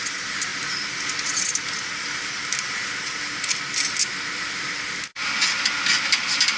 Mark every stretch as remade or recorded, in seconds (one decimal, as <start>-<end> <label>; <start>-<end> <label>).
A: 0.0-6.6 recorded